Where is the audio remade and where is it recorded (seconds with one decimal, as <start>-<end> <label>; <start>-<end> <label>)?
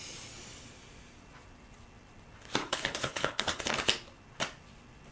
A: 0.0-2.6 recorded; 2.6-3.6 remade; 3.6-5.1 recorded